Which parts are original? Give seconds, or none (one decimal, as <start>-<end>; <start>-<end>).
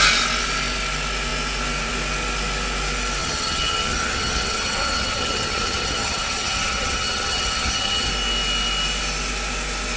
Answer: 0.0-3.2; 8.1-10.0